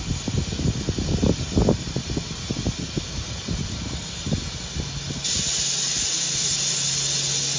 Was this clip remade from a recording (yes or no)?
no